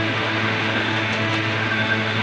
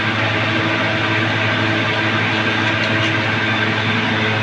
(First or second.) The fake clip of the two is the first